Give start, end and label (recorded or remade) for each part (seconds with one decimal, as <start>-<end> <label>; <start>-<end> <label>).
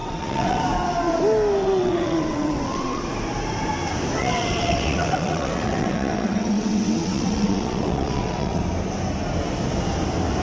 0.0-0.6 remade; 0.6-1.6 recorded; 1.6-3.0 remade; 3.0-4.2 recorded; 4.2-8.6 remade; 8.6-10.4 recorded